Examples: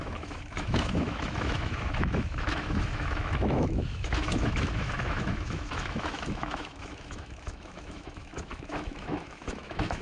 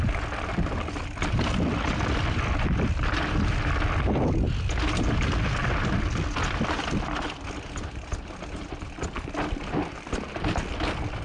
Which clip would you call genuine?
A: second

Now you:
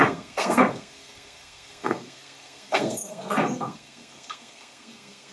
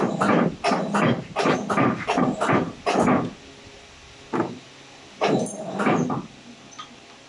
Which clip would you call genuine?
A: second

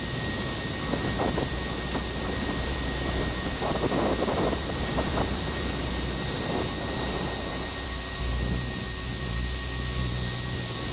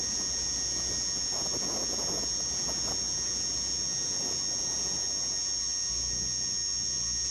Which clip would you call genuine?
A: second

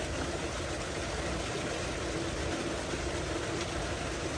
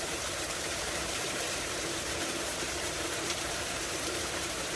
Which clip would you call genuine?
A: first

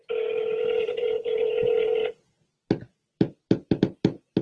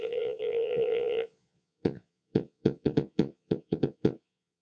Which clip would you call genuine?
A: first